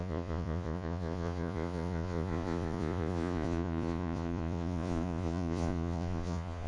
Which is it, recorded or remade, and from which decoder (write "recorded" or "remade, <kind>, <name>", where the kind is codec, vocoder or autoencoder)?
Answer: remade, vocoder, Vocos